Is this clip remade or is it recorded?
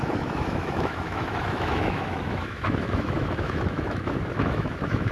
remade